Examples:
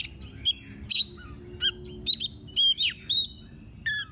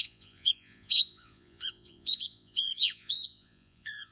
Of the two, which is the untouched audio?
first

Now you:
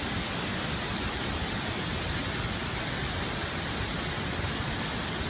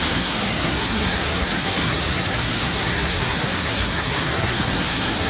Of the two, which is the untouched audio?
first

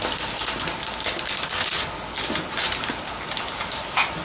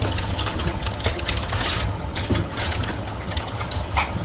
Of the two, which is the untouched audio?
first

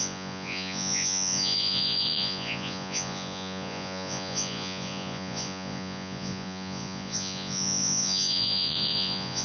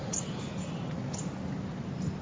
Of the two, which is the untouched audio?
second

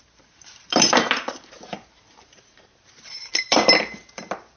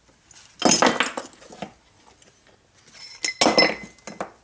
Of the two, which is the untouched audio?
second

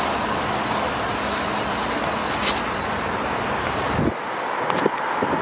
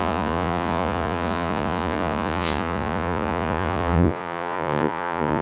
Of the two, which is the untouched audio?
first